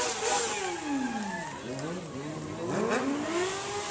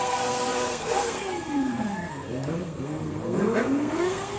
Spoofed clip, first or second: second